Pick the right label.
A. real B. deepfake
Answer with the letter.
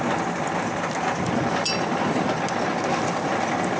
A